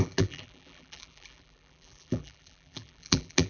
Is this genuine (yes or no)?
no